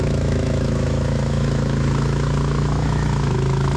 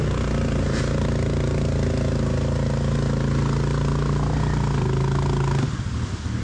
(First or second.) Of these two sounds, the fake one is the first